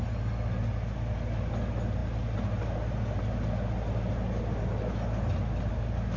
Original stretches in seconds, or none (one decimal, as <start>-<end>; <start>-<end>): 0.0-6.2